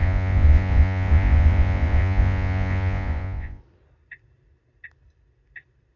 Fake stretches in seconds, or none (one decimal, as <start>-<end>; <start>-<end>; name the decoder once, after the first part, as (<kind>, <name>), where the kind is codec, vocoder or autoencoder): 0.0-3.6 (vocoder, Vocos)